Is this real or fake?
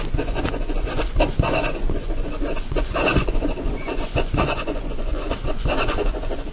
fake